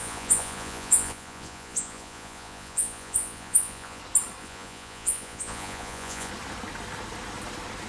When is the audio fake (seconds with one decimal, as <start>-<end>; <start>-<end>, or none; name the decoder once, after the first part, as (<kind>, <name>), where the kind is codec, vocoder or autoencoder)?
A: 0.0-4.0 (vocoder, Vocos); 4.4-6.3

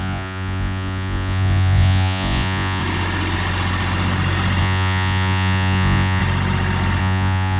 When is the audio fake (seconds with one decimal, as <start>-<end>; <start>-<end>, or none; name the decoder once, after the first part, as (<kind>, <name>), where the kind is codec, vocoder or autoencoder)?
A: 0.0-2.8 (vocoder, Vocos); 4.6-6.2; 7.0-7.6

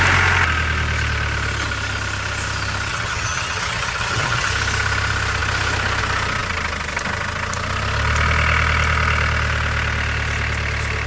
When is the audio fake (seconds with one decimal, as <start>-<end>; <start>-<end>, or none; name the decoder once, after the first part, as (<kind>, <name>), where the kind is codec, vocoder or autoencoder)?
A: 2.9-4.5 (vocoder, HiFi-GAN)

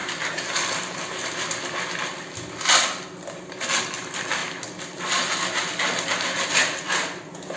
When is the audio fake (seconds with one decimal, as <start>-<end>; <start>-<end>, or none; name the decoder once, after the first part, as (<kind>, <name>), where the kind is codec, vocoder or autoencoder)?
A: 3.8-4.4 (vocoder, BigVGAN v2)